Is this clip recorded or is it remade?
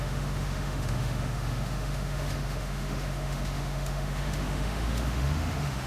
remade